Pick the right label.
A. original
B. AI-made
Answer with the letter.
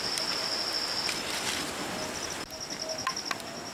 A